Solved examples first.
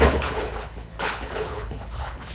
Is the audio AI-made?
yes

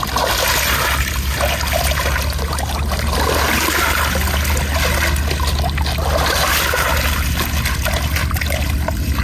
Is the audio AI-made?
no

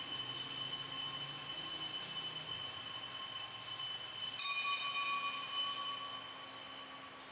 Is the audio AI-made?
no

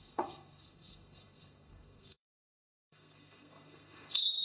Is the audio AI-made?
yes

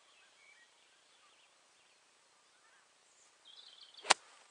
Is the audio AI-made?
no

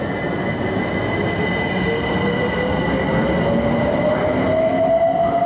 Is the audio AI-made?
no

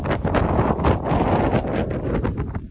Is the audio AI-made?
no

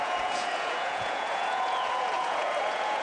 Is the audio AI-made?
yes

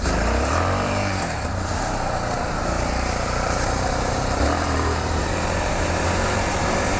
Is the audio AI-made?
yes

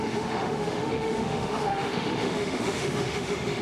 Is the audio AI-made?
yes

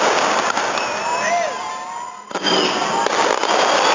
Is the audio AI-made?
no